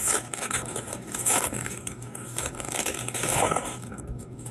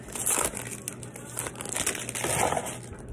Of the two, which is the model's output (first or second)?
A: first